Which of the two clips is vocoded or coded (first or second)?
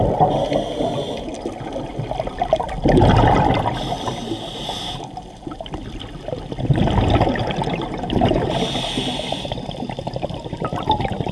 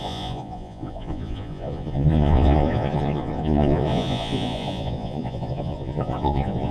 second